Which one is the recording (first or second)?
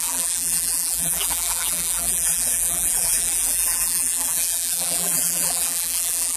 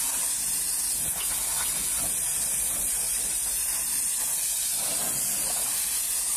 second